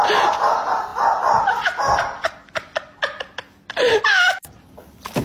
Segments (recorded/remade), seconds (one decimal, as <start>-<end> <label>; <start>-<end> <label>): 0.0-5.2 recorded